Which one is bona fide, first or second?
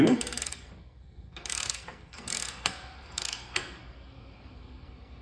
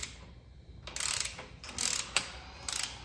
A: second